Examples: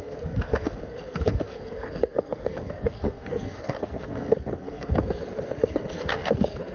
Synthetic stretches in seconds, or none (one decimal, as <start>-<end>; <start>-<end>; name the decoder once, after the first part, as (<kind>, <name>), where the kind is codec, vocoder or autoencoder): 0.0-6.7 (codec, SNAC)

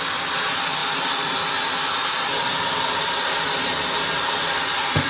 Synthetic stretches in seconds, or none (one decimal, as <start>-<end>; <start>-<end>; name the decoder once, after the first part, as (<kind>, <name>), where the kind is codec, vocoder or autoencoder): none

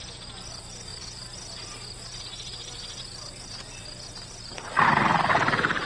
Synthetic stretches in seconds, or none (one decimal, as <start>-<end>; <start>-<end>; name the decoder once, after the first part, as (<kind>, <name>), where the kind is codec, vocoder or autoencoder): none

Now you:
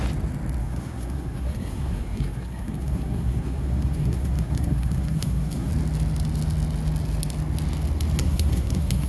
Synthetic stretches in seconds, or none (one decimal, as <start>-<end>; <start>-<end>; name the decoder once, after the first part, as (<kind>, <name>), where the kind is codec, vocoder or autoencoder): 0.6-5.7 (codec, SNAC); 8.2-9.1

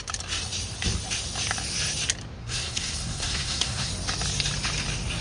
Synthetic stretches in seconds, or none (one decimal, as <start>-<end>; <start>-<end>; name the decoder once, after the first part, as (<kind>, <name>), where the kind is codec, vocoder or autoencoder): 2.4-3.9 (codec, SNAC)

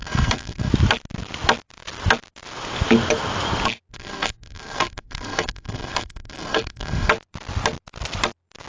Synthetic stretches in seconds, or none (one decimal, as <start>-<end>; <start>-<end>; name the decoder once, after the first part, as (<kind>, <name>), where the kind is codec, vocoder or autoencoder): 0.0-0.7 (codec, SNAC); 3.9-7.1

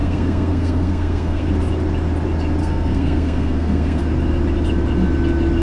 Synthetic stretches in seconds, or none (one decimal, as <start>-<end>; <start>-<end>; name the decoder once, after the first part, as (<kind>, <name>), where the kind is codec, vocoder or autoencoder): 0.0-1.5 (codec, SNAC); 2.6-4.0